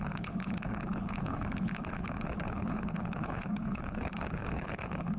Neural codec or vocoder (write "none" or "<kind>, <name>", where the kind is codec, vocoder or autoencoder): codec, HILCodec